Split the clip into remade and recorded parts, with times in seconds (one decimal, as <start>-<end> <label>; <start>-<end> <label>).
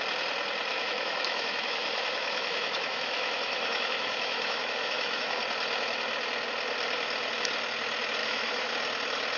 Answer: 0.0-0.7 recorded; 0.7-5.4 remade; 5.4-8.2 recorded; 8.2-8.7 remade; 8.7-9.4 recorded